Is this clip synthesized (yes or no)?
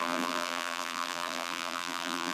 yes